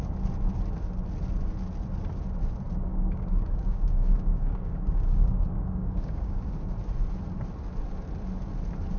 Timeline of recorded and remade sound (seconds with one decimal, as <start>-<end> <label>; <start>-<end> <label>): 0.0-2.9 recorded; 2.9-6.5 remade; 6.5-9.0 recorded